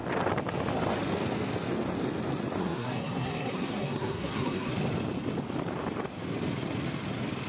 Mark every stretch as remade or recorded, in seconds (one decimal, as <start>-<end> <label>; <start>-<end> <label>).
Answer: 0.0-2.6 recorded; 2.6-4.7 remade; 4.7-7.5 recorded